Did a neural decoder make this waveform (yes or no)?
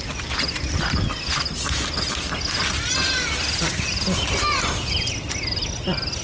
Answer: no